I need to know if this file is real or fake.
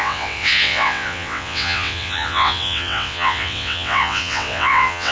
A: fake